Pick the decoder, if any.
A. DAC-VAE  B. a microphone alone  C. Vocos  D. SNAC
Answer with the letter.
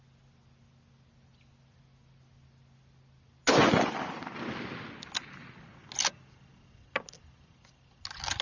B